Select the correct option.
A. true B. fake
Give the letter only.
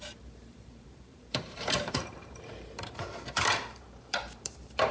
B